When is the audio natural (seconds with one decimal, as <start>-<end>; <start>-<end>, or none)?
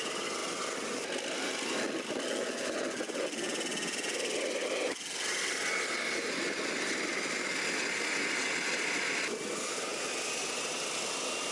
0.0-11.5